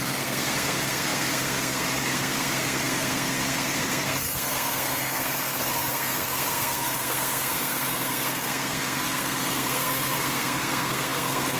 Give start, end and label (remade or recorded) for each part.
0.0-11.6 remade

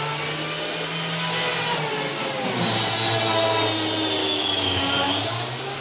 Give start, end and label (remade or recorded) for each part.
0.0-4.2 recorded; 4.2-4.8 remade; 4.8-5.8 recorded

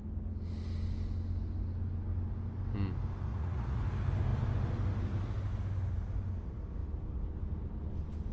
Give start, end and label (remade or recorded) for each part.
0.0-3.3 recorded; 3.3-3.8 remade; 3.8-8.3 recorded

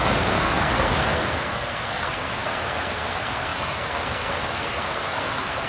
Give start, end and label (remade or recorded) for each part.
0.0-5.7 remade